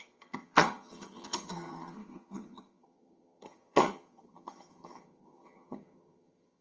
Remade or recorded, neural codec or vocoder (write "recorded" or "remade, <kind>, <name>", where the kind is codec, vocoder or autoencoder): remade, vocoder, HiFi-GAN